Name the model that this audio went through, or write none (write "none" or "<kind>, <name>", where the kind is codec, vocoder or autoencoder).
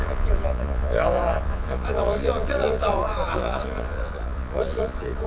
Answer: vocoder, Vocos